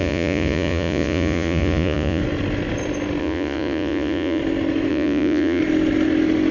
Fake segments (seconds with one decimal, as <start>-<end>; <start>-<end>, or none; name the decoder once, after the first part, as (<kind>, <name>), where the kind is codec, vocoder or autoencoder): 0.0-2.2 (vocoder, Vocos); 3.2-4.4; 4.9-5.6

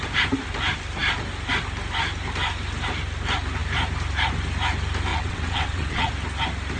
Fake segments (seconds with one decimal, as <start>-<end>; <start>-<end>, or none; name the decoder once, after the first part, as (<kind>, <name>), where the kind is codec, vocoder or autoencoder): 5.1-6.1 (vocoder, WaveNeXt)

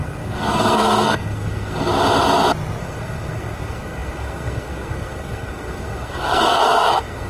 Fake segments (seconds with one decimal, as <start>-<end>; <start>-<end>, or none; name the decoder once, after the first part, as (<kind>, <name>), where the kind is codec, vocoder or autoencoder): 0.0-1.9 (codec, SNAC); 2.8-7.3

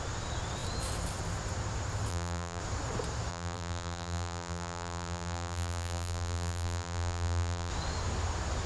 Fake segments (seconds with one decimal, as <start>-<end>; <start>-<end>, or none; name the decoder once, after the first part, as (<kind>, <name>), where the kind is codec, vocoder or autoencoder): 2.1-2.6 (vocoder, BigVGAN v2); 3.3-7.7

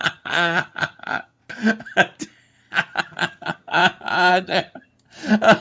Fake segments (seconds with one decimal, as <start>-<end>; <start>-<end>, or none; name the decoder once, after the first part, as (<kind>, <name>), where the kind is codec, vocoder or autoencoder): 0.0-1.4 (vocoder, HiFi-GAN); 3.0-3.8; 4.3-4.9

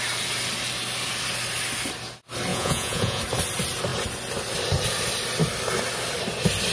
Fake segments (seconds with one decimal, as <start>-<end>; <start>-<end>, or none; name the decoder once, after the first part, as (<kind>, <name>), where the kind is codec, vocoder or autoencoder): 2.5-3.2 (vocoder, Vocos)

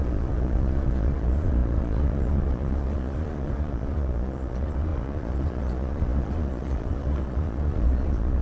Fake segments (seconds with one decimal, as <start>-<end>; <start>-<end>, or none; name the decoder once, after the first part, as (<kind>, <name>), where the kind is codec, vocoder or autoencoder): 0.0-8.4 (vocoder, Vocos)